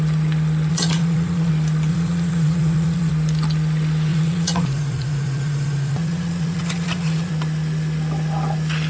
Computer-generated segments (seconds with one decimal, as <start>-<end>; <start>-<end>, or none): 0.7-1.5; 1.9-3.1; 4.1-7.3

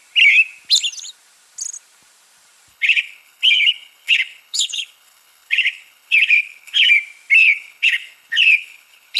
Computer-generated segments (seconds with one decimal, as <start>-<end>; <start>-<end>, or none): 2.7-6.9; 7.4-9.2

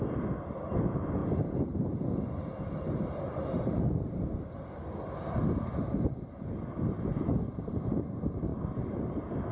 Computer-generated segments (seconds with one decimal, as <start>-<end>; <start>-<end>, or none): none

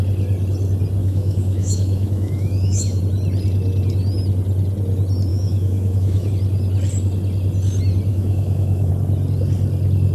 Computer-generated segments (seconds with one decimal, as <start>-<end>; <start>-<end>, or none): 1.0-3.0; 5.3-6.3; 8.1-8.9

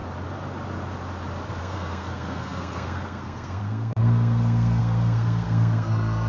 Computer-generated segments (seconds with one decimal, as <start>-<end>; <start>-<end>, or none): 1.6-6.3